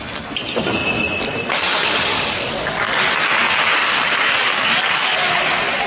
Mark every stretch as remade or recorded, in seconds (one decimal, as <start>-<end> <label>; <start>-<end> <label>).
0.0-2.1 recorded; 2.1-3.0 remade; 3.0-3.8 recorded; 3.8-5.3 remade; 5.3-5.9 recorded